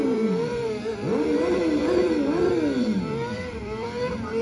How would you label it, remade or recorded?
remade